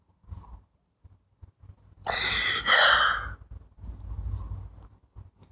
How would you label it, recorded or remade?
recorded